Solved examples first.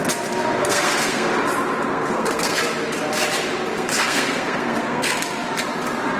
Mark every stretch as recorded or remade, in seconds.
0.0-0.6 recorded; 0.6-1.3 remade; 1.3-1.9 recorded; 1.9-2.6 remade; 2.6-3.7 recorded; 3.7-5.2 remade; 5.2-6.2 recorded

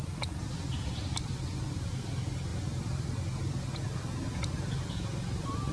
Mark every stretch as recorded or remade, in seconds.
0.0-5.7 recorded

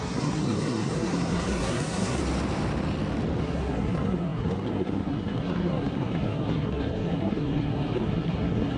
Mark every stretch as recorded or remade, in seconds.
0.0-2.2 remade; 2.2-3.4 recorded; 3.4-8.8 remade

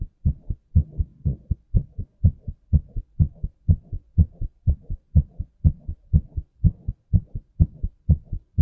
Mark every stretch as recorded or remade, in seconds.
0.0-6.5 remade; 6.5-7.2 recorded; 7.2-8.6 remade